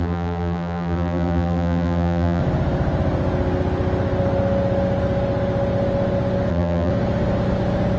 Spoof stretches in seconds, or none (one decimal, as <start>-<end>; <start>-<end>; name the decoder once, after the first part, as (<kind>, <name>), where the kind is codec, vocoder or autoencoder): 0.0-2.4 (vocoder, BigVGAN v2); 6.5-6.9